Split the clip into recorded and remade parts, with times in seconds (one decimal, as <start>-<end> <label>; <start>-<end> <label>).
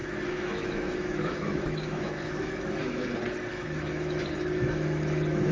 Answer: 0.0-3.1 remade; 3.1-3.5 recorded; 3.5-5.5 remade